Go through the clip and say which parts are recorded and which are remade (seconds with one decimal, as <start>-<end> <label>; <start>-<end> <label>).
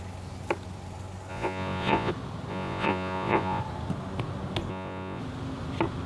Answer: 0.0-1.3 recorded; 1.3-2.1 remade; 2.1-2.5 recorded; 2.5-3.6 remade; 3.6-4.7 recorded; 4.7-5.2 remade; 5.2-6.1 recorded